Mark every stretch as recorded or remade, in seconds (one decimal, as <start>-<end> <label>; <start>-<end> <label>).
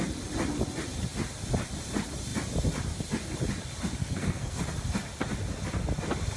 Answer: 0.0-4.0 recorded; 4.0-4.6 remade; 4.6-6.4 recorded